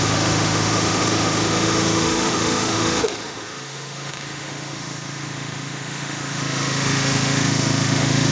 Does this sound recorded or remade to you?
remade